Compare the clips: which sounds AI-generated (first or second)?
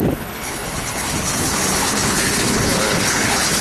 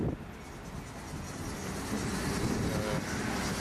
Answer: first